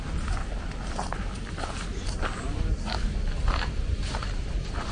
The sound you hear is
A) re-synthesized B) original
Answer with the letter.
B